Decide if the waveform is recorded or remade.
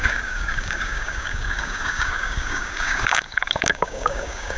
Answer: remade